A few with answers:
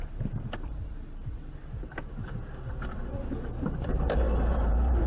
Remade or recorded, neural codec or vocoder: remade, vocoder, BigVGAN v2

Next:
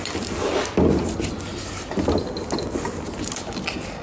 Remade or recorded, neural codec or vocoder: recorded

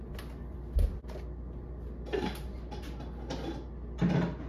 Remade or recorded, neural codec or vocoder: recorded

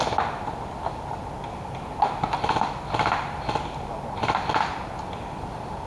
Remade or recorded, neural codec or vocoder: recorded